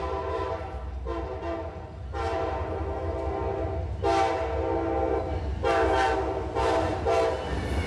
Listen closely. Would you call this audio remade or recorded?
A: recorded